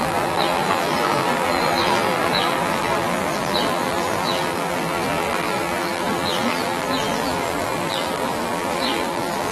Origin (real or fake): fake